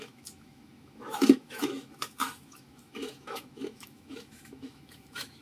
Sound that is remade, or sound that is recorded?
remade